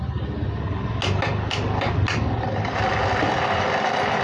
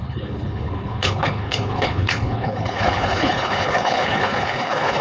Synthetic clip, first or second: second